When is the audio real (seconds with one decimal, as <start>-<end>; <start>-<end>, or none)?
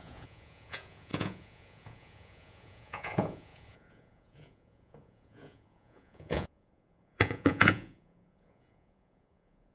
none